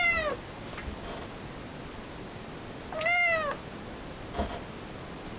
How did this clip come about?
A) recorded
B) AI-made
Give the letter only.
A